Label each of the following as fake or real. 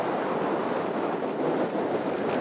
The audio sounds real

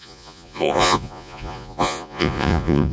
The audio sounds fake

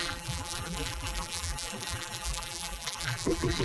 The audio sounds fake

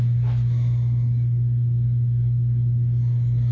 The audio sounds real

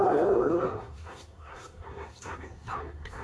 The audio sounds fake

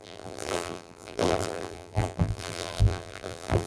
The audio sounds fake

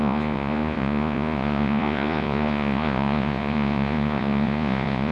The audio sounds fake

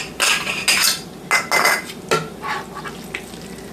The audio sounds real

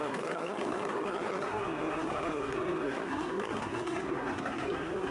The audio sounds fake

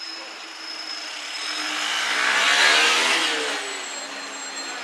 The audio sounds real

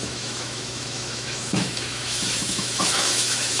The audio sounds fake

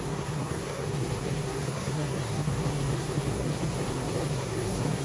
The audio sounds fake